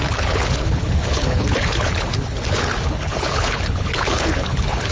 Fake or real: fake